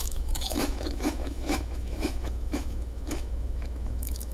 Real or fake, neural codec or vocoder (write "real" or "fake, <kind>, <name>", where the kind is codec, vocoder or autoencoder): fake, autoencoder, DAC-VAE